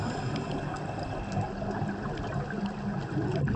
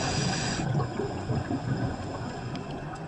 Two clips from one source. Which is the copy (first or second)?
second